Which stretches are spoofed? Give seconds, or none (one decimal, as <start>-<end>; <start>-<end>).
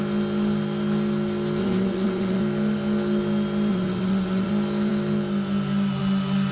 1.6-2.4; 3.7-4.5